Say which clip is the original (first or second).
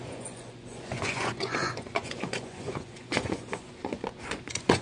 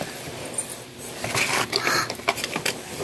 second